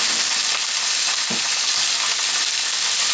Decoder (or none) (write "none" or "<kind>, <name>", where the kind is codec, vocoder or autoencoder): none